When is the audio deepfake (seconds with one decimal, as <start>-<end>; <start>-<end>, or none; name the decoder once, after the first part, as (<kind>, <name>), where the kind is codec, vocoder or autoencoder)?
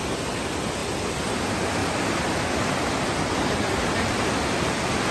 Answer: none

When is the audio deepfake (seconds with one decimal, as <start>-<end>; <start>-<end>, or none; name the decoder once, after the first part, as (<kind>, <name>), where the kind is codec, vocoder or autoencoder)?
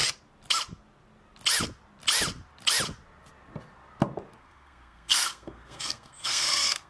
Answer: 4.4-6.9 (codec, SNAC)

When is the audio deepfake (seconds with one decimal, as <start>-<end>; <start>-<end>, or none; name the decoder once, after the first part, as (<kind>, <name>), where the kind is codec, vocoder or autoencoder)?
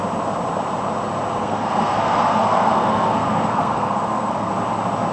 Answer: 1.4-4.5 (codec, SNAC)